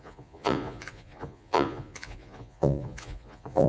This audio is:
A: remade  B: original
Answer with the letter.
A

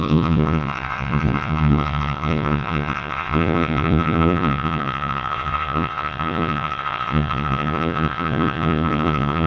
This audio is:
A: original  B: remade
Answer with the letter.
B